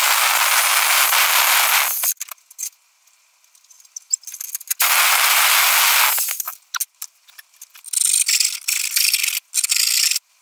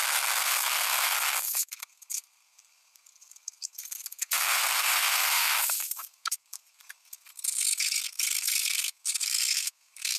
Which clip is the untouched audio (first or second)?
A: first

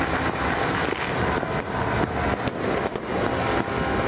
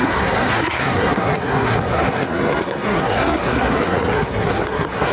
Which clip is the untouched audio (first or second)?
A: first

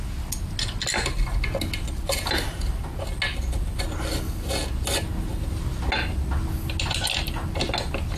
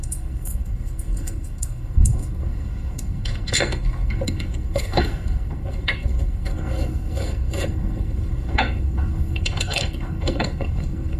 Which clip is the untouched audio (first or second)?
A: first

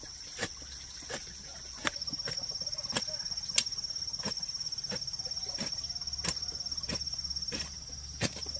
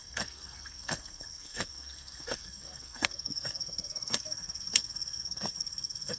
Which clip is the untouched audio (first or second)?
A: first